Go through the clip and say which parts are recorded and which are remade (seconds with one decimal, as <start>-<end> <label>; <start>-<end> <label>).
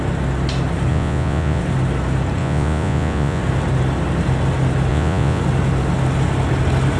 0.0-0.9 recorded; 0.9-1.6 remade; 1.6-2.4 recorded; 2.4-3.4 remade; 3.4-4.9 recorded; 4.9-5.4 remade; 5.4-7.0 recorded